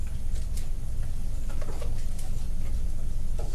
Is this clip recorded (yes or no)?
yes